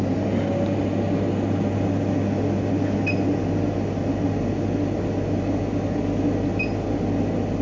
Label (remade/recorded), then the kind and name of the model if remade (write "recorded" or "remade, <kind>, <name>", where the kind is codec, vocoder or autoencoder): recorded